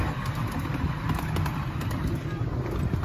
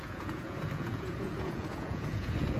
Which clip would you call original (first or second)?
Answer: first